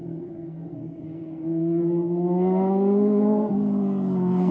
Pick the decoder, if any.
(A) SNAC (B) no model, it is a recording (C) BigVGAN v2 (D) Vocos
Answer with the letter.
A